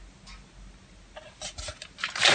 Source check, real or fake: real